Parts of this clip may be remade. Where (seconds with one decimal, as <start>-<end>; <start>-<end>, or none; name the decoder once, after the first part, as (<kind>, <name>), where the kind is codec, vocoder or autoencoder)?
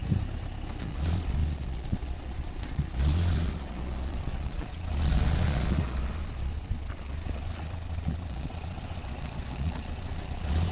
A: 0.8-10.7 (vocoder, Vocos)